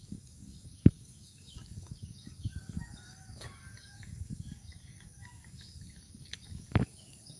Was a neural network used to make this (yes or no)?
yes